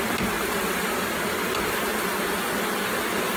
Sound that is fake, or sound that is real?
real